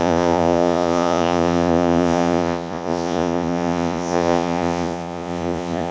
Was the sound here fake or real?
fake